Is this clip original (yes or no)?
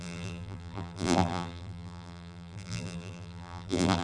no